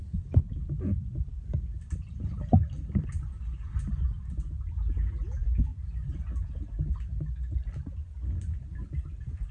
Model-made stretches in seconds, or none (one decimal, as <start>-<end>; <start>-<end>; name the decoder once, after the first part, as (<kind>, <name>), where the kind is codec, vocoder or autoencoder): none